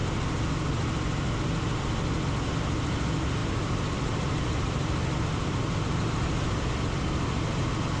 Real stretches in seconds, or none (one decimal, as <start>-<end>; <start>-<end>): 0.0-3.4; 6.7-8.0